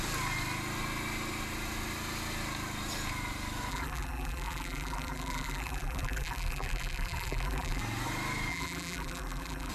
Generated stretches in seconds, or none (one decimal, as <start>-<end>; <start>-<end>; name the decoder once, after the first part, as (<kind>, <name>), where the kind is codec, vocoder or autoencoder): 3.7-7.8 (vocoder, BigVGAN v2); 8.5-9.7